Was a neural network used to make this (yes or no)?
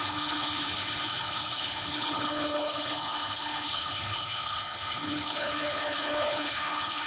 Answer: yes